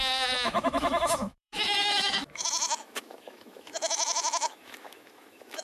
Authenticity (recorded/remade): remade